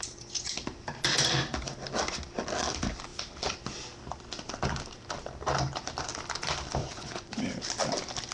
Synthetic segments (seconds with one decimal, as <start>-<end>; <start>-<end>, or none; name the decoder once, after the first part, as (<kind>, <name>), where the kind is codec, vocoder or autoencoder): 6.8-7.4 (vocoder, Vocos)